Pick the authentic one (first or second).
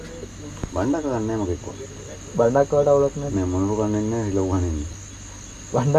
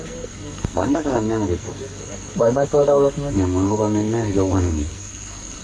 first